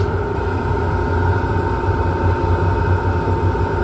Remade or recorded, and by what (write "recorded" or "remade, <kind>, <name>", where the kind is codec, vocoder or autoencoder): recorded